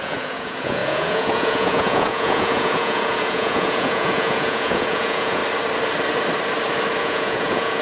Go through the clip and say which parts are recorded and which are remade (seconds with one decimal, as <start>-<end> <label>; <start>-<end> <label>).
0.0-5.4 remade; 5.4-7.0 recorded; 7.0-7.8 remade